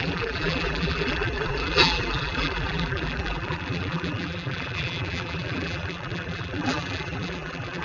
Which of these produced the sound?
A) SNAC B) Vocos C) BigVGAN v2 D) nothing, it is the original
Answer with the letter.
C